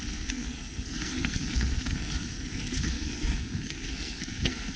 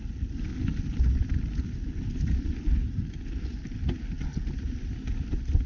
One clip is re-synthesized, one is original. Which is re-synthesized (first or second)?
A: first